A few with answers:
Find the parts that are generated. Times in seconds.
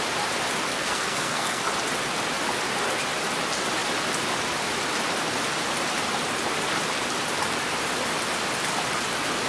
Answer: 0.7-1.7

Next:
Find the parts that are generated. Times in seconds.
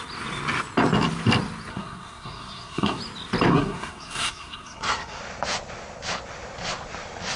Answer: 1.7-3.0; 3.5-5.2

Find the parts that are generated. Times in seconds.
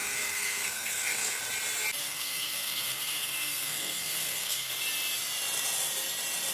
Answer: 0.0-1.4; 2.0-4.7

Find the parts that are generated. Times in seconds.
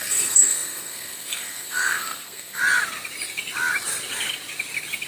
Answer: 0.0-2.6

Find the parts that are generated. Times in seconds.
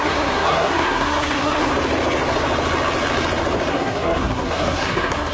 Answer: 0.0-1.7; 3.7-5.3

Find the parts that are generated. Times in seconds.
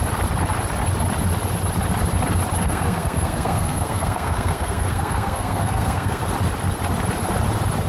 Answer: 2.6-6.2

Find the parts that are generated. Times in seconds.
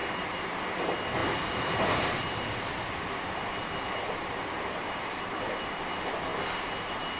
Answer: none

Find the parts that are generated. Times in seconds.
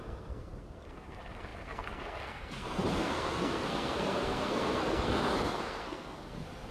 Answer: 0.0-6.7